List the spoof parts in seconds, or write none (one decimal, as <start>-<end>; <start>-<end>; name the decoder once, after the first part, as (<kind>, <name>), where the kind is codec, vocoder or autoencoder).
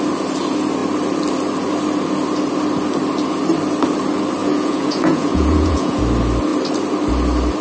4.4-6.0 (vocoder, Vocos)